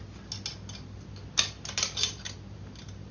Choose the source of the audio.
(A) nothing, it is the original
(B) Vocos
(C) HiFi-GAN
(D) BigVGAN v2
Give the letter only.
A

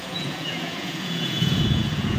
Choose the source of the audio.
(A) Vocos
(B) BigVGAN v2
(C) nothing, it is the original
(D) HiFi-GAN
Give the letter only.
A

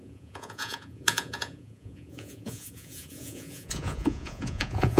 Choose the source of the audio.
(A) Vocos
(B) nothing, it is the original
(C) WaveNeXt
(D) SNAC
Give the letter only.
A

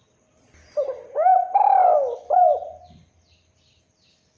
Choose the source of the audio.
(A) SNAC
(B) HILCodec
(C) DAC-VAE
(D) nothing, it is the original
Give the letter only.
D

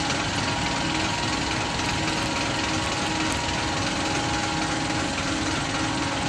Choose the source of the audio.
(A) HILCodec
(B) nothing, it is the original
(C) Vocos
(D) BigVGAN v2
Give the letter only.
B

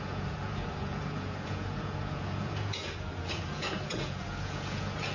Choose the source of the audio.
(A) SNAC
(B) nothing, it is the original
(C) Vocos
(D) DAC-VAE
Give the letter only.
C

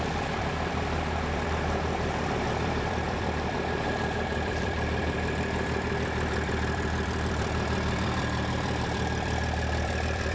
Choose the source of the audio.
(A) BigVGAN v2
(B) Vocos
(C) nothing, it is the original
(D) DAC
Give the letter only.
A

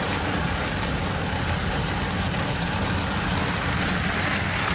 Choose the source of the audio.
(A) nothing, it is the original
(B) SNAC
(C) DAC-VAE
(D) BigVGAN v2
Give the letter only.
A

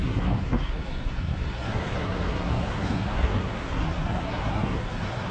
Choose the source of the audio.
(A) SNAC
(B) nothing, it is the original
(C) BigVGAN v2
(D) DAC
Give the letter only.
A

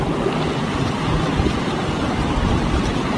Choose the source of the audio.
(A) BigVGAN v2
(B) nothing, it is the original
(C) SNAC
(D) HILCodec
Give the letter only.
B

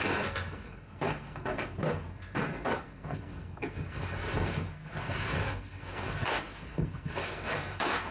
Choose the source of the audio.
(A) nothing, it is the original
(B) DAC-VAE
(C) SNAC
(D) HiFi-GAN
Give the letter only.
C